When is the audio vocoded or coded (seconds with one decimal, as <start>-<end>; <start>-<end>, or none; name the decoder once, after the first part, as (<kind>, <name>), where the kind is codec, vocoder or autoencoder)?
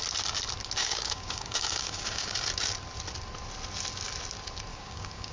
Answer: 0.8-2.3 (codec, DAC); 4.7-5.3